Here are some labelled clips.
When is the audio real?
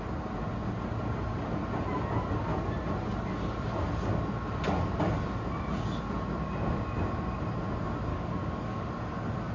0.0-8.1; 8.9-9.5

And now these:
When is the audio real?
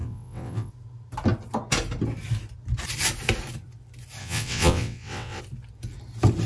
0.7-4.2; 5.4-6.5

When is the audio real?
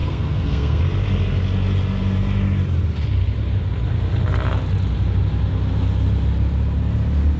0.8-7.4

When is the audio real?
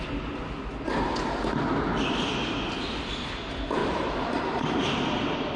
0.0-3.8; 4.7-5.6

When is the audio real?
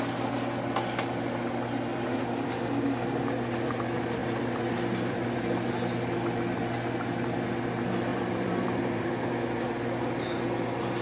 0.0-1.9; 2.5-4.2; 5.7-8.1; 9.3-11.0